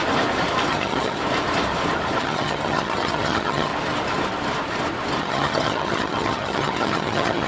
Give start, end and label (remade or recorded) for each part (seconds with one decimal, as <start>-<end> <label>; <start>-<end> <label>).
0.0-0.7 recorded; 0.7-1.2 remade; 1.2-2.2 recorded; 2.2-3.7 remade; 3.7-5.2 recorded; 5.2-7.5 remade